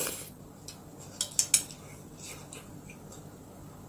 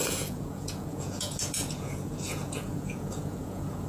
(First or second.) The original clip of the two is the first